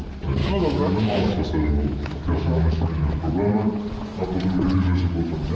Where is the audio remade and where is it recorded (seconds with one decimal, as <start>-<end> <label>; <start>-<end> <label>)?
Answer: 0.0-0.4 recorded; 0.4-3.7 remade; 3.7-5.5 recorded